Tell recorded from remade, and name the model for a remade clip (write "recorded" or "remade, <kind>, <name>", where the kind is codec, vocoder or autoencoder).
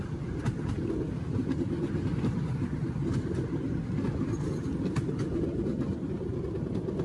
recorded